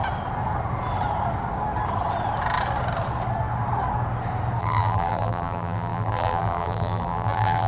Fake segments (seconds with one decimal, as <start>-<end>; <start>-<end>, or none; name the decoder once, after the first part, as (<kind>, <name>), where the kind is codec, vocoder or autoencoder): 4.6-7.7 (vocoder, BigVGAN v2)